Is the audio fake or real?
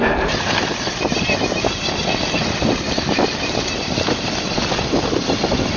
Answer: real